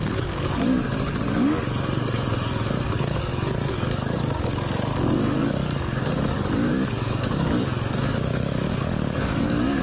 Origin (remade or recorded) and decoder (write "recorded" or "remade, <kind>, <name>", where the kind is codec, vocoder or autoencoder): remade, codec, DAC